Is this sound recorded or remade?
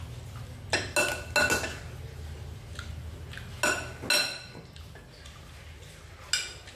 recorded